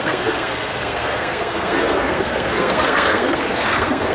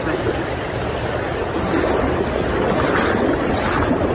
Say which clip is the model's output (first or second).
first